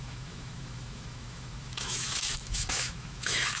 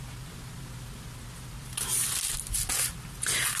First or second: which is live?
second